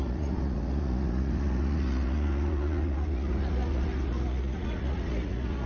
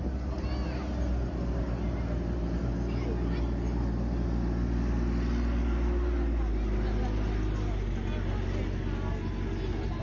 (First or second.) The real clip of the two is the second